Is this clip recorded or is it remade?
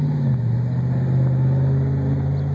recorded